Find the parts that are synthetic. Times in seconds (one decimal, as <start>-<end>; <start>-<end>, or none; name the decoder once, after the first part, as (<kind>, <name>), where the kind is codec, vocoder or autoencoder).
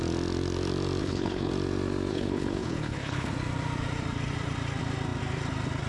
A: 1.0-1.5 (codec, HILCodec); 2.1-3.3